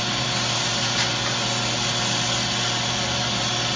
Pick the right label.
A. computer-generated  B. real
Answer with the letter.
B